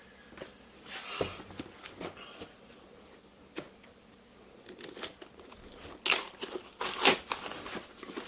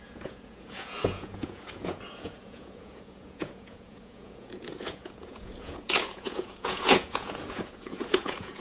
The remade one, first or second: second